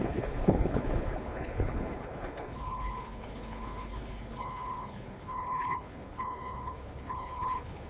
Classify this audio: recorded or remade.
remade